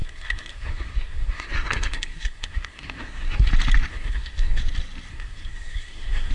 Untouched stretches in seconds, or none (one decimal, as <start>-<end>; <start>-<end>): 3.5-3.9; 4.6-5.1